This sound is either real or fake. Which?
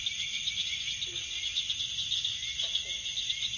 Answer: real